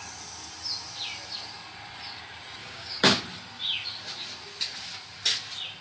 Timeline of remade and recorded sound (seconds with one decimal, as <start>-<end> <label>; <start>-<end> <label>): 0.0-2.6 recorded; 2.6-3.2 remade; 3.2-5.8 recorded